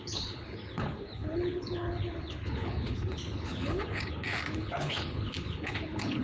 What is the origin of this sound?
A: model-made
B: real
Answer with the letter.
A